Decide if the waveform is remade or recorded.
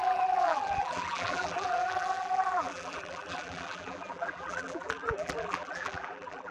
remade